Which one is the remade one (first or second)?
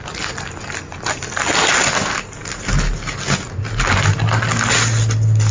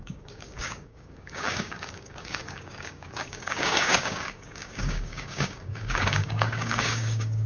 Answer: second